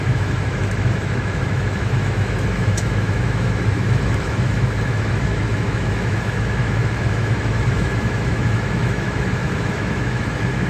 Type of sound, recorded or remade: remade